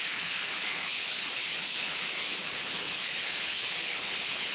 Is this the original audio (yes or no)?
no